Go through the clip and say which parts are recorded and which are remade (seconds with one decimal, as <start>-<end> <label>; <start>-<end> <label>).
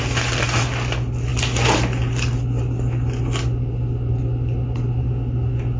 0.0-5.8 recorded